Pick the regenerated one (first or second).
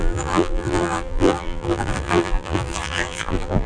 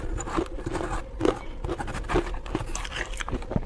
first